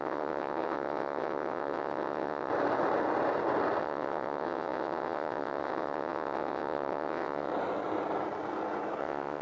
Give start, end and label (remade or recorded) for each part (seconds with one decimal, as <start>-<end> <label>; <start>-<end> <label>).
0.0-2.5 remade; 2.5-3.8 recorded; 3.8-7.5 remade; 7.5-9.0 recorded; 9.0-9.4 remade